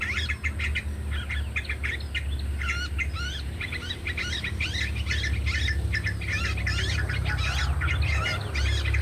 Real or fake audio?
real